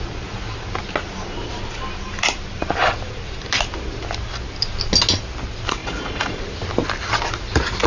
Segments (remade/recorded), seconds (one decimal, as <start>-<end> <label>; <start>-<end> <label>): 0.0-5.8 recorded; 5.8-6.4 remade; 6.4-7.9 recorded